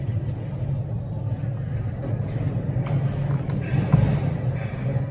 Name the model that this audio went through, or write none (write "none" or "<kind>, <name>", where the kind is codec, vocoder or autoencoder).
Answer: none